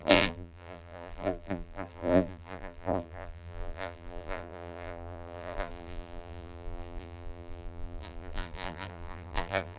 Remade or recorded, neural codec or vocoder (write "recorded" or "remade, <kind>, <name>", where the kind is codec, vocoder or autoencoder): remade, vocoder, BigVGAN v2